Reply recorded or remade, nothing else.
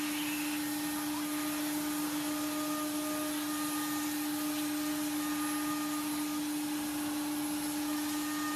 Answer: recorded